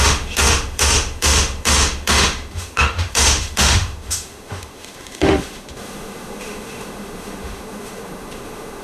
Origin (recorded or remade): remade